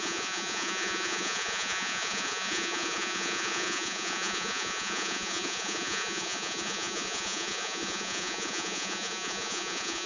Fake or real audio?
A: fake